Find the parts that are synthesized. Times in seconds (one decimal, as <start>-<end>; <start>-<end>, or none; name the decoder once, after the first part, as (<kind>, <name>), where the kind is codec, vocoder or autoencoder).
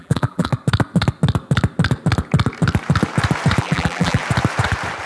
0.0-0.5 (vocoder, BigVGAN v2); 3.6-4.2